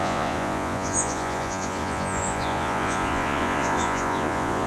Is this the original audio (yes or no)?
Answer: no